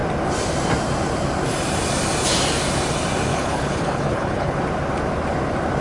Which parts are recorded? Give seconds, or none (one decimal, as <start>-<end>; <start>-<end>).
0.0-3.3; 4.6-5.8